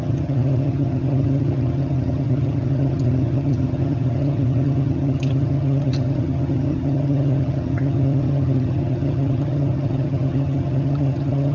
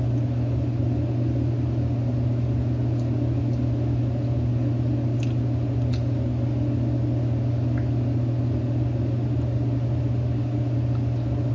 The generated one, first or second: first